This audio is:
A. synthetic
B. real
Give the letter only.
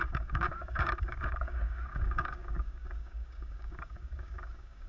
A